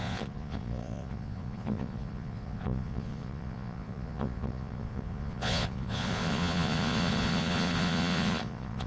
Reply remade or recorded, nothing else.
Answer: remade